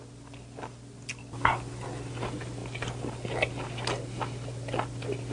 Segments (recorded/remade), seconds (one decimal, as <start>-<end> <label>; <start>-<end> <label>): 0.0-5.3 recorded